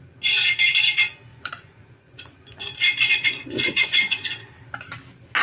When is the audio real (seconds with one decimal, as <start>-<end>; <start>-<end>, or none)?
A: 0.0-1.3; 4.5-5.4

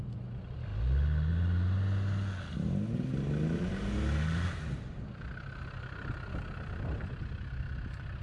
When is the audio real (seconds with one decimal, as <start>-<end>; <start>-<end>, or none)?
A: 0.0-8.2

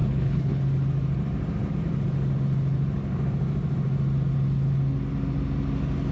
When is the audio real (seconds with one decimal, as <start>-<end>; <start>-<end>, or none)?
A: 0.6-6.1

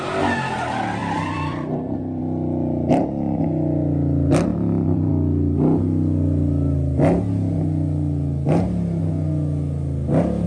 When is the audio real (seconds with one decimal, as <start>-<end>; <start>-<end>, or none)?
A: 0.0-1.0; 2.2-4.5; 5.1-10.5

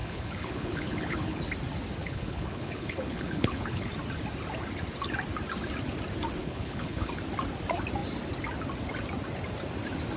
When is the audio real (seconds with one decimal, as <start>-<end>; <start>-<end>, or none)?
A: 1.4-2.0; 3.9-6.4; 7.1-10.2

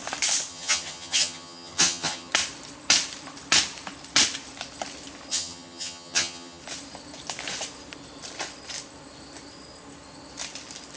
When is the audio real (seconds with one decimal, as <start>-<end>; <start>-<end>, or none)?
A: 0.0-0.5; 2.3-5.3; 6.6-11.0

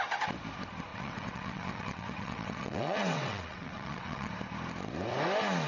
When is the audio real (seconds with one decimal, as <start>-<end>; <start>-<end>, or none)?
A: 0.0-0.9; 4.3-5.7